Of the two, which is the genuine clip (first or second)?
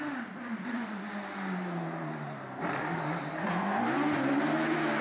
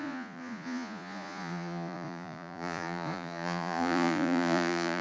first